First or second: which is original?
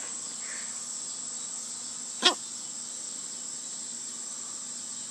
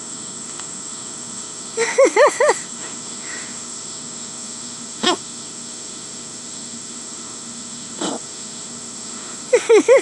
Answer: first